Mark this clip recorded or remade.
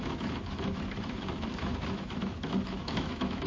remade